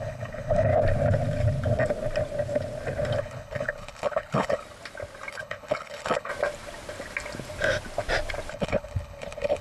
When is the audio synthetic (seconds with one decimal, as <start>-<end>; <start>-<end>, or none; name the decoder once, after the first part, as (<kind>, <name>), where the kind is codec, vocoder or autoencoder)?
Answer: 0.0-0.7 (codec, HILCodec); 3.2-4.6; 5.3-6.3; 8.5-9.6